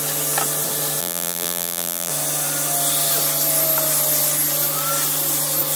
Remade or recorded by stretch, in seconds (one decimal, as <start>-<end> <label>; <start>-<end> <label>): 0.0-1.0 recorded; 1.0-2.1 remade; 2.1-5.8 recorded

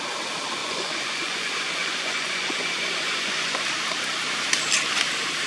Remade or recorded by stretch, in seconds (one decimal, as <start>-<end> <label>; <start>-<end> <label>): 0.0-0.6 recorded; 0.6-3.6 remade; 3.6-5.5 recorded

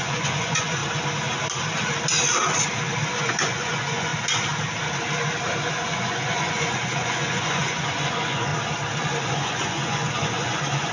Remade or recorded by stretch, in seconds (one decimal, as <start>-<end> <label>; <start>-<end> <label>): 0.0-0.8 remade; 0.8-3.2 recorded; 3.2-4.1 remade; 4.1-5.7 recorded; 5.7-8.5 remade; 8.5-9.2 recorded; 9.2-10.9 remade

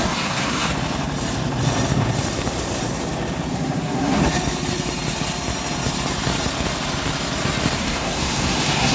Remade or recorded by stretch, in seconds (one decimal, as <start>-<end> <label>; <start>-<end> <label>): 0.0-0.7 remade; 0.7-3.5 recorded; 3.5-4.2 remade; 4.2-7.8 recorded; 7.8-8.9 remade

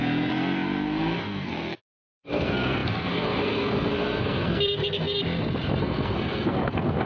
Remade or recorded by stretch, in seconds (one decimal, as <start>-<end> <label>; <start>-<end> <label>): 0.0-5.2 remade; 5.2-5.8 recorded; 5.8-7.1 remade

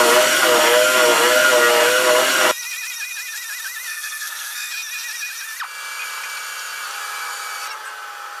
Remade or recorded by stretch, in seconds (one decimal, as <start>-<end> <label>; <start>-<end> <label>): 0.0-3.9 recorded; 3.9-4.7 remade; 4.7-8.4 recorded

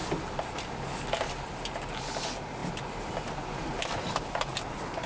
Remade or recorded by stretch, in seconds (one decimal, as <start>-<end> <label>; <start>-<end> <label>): 0.0-5.1 recorded

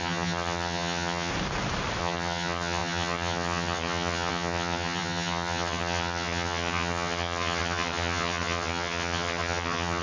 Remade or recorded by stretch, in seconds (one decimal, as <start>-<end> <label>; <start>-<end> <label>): 0.0-1.3 remade; 1.3-2.0 recorded; 2.0-10.0 remade